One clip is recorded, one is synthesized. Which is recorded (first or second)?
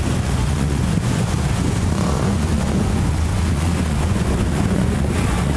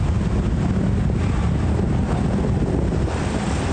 second